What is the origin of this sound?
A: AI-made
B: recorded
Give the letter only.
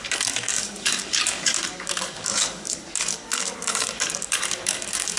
A